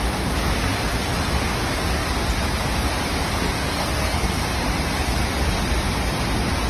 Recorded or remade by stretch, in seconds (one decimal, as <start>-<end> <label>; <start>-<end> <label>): 0.0-3.7 recorded; 3.7-4.4 remade; 4.4-6.7 recorded